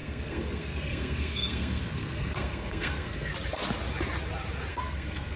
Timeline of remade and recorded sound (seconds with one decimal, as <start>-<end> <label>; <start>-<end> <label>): 0.0-3.3 remade; 3.3-4.7 recorded; 4.7-5.4 remade